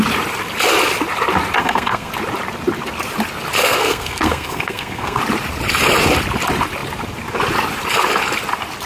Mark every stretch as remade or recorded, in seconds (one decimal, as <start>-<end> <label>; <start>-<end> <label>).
0.0-1.6 recorded; 1.6-2.1 remade; 2.1-3.6 recorded; 3.6-5.2 remade; 5.2-8.9 recorded